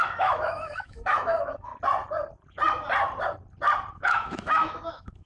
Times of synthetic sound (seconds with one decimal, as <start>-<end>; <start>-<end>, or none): 0.0-1.7; 3.9-5.3